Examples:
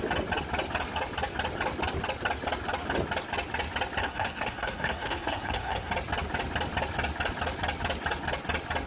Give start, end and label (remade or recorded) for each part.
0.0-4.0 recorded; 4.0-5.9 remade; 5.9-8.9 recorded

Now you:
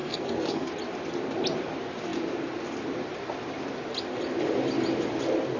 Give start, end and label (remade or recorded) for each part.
0.0-0.7 remade; 0.7-5.6 recorded

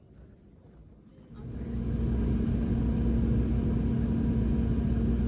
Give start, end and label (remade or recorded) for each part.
0.0-5.3 recorded